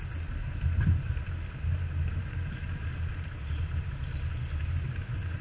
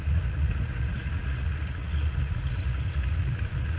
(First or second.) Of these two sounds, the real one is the first